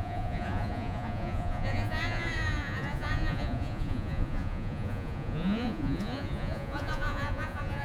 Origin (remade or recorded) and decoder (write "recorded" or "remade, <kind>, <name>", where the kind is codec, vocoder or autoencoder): remade, vocoder, Vocos